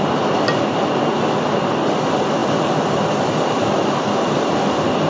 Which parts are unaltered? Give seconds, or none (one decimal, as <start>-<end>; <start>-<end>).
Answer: 0.0-2.4